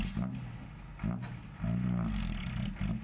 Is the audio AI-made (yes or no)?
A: no